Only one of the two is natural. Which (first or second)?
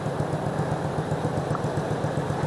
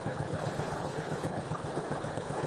first